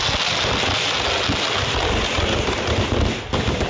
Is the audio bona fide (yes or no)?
yes